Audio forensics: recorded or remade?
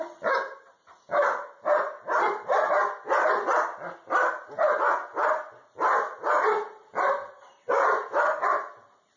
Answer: recorded